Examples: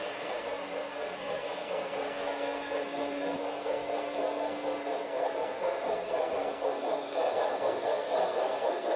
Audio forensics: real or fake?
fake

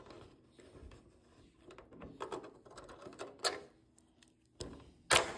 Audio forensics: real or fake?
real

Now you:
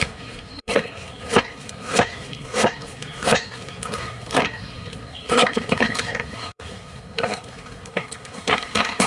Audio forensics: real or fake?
fake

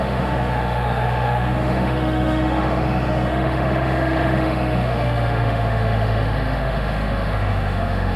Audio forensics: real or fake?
fake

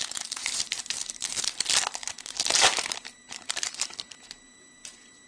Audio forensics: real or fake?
fake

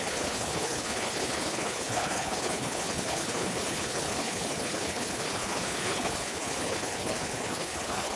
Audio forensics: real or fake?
fake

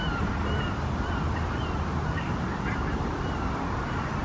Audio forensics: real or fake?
real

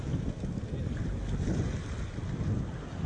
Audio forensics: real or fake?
real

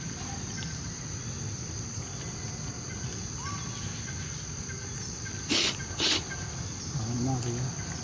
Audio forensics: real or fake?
real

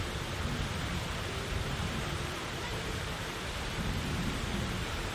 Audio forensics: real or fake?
fake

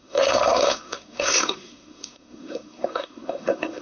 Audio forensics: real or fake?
fake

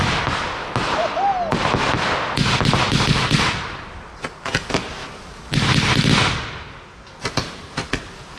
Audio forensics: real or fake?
real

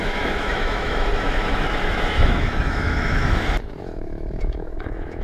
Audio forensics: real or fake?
fake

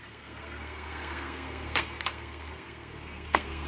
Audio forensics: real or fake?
fake